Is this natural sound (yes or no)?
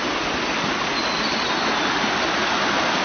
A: yes